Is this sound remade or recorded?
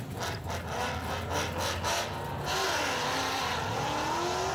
recorded